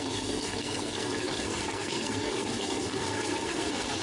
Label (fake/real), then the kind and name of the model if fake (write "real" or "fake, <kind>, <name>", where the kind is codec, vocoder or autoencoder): fake, codec, SNAC